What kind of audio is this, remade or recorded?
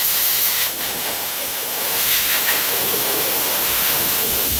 remade